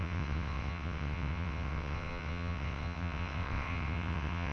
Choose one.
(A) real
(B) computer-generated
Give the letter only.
B